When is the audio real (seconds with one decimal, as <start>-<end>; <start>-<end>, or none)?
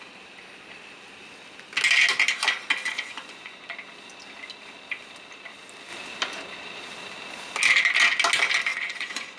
0.0-2.8; 3.6-8.7